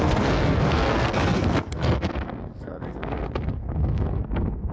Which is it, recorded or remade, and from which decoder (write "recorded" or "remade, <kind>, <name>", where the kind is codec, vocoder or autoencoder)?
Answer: remade, codec, SNAC